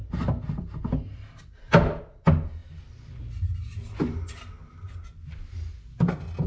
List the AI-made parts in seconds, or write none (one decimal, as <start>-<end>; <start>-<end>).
0.0-2.0